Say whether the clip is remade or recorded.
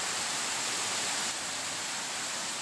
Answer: recorded